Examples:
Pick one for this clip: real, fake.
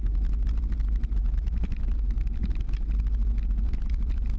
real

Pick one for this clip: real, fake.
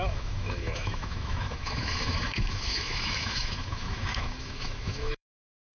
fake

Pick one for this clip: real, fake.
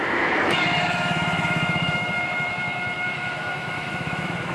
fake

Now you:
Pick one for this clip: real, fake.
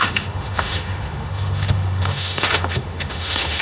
fake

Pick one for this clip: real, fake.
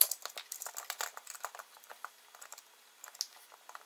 real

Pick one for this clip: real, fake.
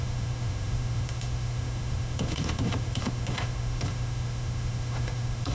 fake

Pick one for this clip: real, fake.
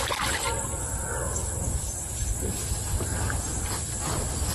real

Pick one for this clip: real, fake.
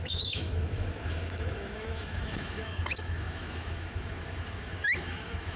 fake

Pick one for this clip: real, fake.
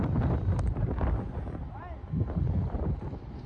real